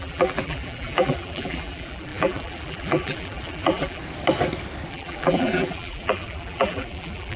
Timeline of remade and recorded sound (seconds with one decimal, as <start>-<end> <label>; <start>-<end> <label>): 0.0-4.0 remade; 4.0-4.9 recorded; 4.9-7.4 remade